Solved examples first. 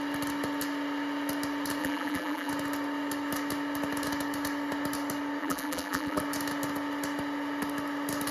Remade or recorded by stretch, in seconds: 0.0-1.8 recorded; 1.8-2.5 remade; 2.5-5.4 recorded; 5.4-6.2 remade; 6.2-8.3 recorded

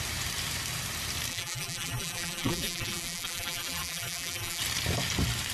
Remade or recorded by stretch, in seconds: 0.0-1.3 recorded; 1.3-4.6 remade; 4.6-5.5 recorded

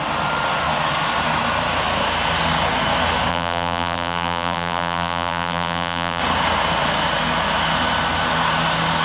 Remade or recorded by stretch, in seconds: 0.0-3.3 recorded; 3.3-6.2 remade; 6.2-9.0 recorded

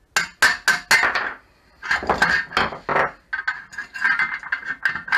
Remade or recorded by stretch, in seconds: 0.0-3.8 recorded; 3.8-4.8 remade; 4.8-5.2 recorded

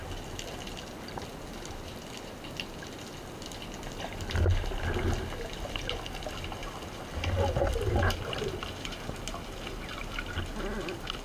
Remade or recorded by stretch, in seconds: 0.0-11.2 recorded